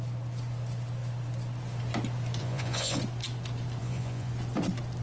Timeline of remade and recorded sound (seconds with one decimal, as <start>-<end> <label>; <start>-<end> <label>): 0.0-2.4 recorded; 2.4-3.0 remade; 3.0-3.8 recorded; 3.8-4.3 remade; 4.3-5.0 recorded